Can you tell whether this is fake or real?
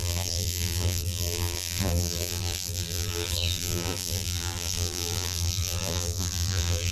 fake